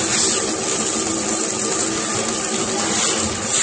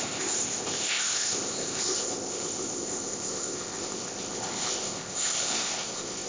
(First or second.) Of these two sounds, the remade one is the second